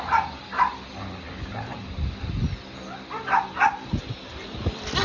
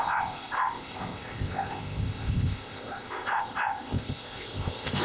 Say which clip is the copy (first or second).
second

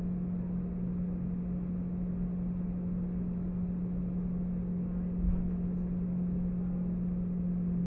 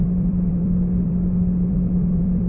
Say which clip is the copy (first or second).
second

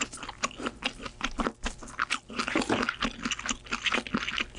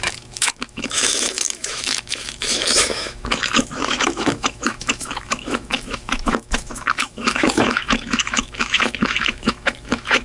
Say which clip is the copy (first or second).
second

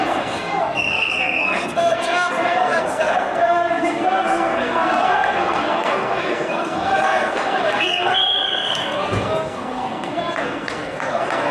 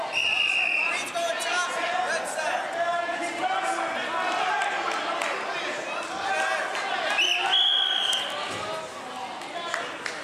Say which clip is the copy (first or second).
first